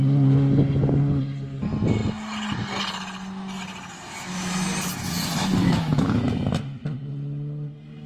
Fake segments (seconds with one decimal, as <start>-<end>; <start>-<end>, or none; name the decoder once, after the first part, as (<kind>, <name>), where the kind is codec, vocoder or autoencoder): 5.6-6.2 (autoencoder, DAC-VAE)